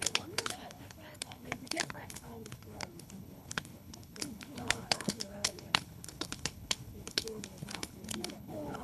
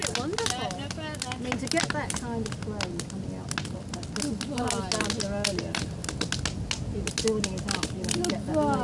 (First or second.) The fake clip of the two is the first